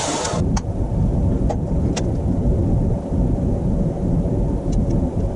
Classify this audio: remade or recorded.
recorded